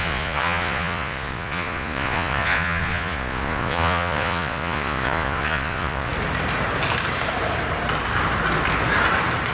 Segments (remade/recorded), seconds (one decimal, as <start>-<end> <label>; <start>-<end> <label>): 0.0-6.1 remade; 6.1-9.5 recorded